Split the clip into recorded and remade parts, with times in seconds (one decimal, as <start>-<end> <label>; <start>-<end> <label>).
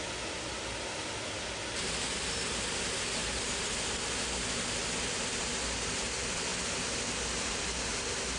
0.0-8.4 recorded